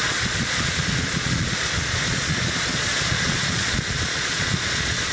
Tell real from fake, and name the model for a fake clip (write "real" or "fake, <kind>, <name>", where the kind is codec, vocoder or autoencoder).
fake, vocoder, Vocos